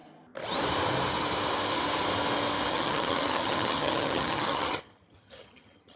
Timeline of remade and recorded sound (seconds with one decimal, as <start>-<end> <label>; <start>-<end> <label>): 0.0-2.7 recorded; 2.7-6.0 remade